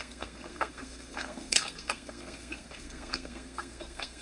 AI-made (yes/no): yes